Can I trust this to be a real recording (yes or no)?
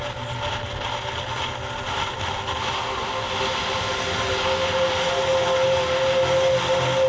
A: yes